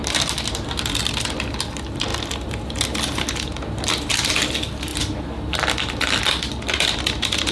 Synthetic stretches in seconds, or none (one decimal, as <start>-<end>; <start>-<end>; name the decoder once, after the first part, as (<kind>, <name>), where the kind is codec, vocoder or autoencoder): 0.0-7.5 (vocoder, BigVGAN v2)